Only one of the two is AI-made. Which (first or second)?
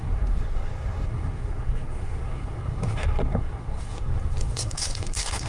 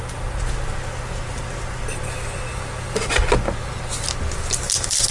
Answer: first